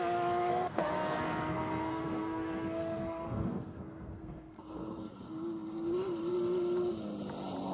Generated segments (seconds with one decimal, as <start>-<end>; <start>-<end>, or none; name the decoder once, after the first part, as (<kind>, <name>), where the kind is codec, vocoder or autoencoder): 0.5-5.1 (codec, SNAC)